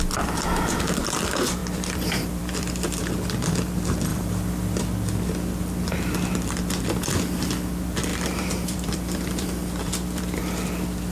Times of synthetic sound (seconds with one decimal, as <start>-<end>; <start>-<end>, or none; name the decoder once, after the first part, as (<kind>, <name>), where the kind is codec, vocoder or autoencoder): 1.6-3.0 (vocoder, BigVGAN v2); 4.1-4.8; 8.1-10.4